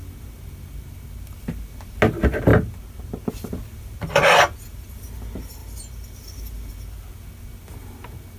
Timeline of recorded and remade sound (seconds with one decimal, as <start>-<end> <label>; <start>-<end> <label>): 0.0-8.4 recorded